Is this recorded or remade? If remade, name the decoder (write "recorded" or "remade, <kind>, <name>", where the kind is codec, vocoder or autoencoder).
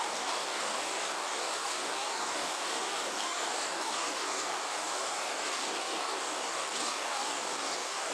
remade, codec, DAC